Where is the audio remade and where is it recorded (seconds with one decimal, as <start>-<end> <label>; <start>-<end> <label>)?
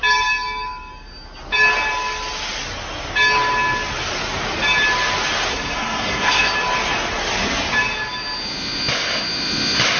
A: 0.0-5.5 recorded; 5.5-6.5 remade; 6.5-10.0 recorded